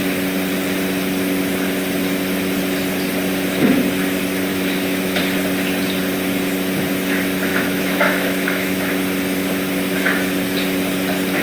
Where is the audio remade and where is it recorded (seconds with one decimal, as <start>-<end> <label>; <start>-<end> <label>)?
0.0-4.5 recorded; 4.5-5.2 remade; 5.2-7.5 recorded; 7.5-8.9 remade; 8.9-11.4 recorded